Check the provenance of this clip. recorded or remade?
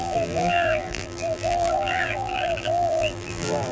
remade